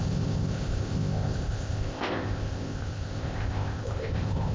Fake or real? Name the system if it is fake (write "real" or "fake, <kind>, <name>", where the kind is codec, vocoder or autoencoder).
fake, codec, ZipCodec